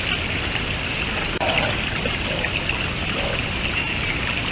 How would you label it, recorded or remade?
recorded